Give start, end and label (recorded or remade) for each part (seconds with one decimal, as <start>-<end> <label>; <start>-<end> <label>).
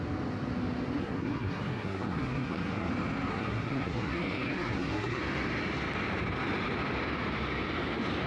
0.0-1.0 recorded; 1.0-2.9 remade; 2.9-3.3 recorded; 3.3-5.2 remade; 5.2-8.3 recorded